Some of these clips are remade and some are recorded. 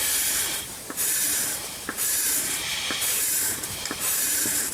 remade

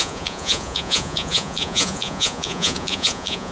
remade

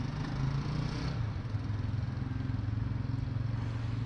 recorded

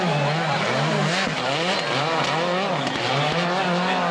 recorded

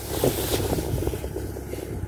recorded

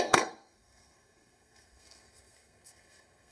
remade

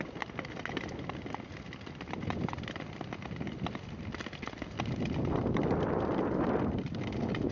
recorded